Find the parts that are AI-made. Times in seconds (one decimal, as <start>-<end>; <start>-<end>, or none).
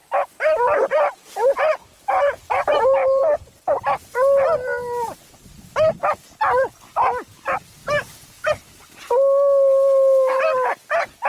0.0-3.6; 7.8-9.0